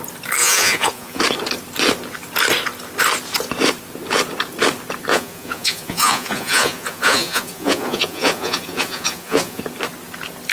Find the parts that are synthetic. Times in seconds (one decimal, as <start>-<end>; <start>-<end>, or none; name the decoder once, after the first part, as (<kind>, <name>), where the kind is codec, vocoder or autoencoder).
0.4-1.2 (vocoder, Vocos); 5.1-9.6